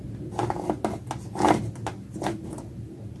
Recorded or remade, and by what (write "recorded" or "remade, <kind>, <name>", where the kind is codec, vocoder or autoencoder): recorded